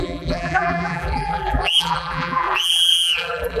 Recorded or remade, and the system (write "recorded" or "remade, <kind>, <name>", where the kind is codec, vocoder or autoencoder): remade, vocoder, BigVGAN v2